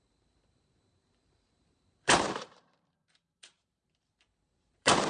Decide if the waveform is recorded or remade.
remade